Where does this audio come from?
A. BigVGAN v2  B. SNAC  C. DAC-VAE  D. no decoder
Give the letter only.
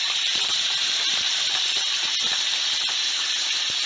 A